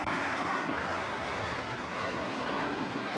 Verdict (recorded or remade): remade